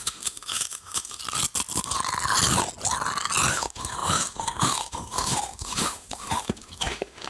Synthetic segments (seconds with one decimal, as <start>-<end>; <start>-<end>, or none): 0.0-1.2; 3.5-7.3